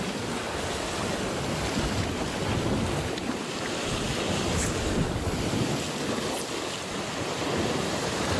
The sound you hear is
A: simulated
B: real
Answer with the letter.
B